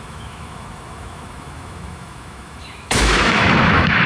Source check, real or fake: fake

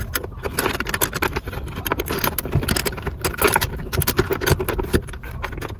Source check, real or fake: real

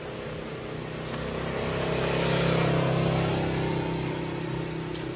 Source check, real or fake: real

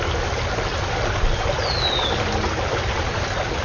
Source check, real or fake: real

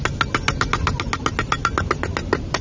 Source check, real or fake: real